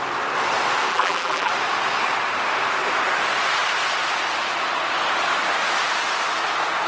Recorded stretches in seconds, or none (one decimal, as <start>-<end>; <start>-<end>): 0.0-0.9; 1.5-6.9